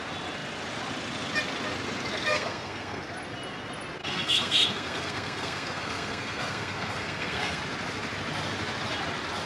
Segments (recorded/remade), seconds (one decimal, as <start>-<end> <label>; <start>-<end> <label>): 0.0-2.3 recorded; 2.3-3.0 remade; 3.0-4.0 recorded; 4.0-7.6 remade; 7.6-9.5 recorded